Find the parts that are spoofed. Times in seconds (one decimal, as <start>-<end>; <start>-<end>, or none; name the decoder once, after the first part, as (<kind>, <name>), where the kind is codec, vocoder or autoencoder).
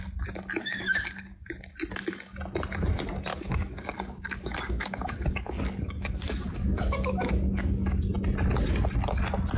0.6-1.4 (codec, DAC); 3.3-8.0